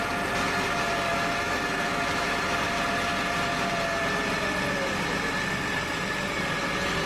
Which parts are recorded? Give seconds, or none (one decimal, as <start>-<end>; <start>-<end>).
0.0-1.1; 2.4-7.1